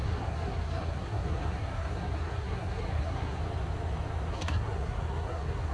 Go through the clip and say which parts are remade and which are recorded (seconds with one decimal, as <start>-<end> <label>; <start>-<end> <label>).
0.0-3.4 remade; 3.4-4.3 recorded; 4.3-5.7 remade